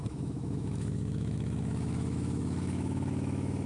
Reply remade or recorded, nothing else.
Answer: remade